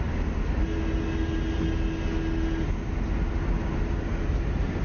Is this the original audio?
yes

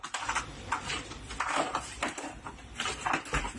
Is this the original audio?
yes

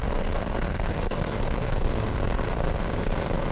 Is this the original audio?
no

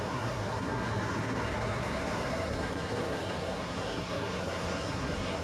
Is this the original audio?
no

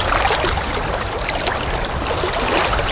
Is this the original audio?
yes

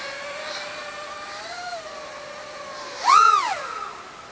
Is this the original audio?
yes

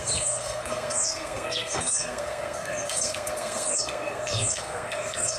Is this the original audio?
no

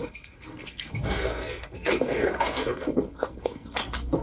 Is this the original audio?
no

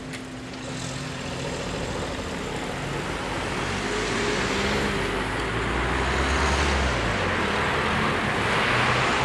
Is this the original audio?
yes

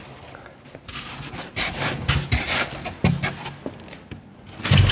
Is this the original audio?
yes